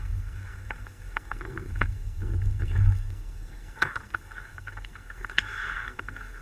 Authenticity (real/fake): fake